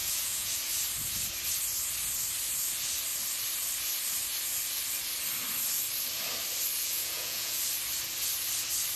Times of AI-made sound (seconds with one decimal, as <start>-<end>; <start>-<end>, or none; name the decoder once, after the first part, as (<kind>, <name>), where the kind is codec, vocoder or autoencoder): 0.0-0.5 (vocoder, Vocos); 6.8-7.6